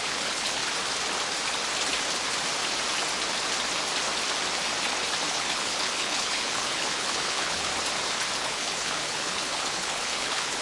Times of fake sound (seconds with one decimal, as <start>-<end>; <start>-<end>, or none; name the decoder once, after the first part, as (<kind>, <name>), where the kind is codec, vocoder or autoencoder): 0.0-0.6 (codec, HILCodec); 5.3-7.7; 8.4-10.6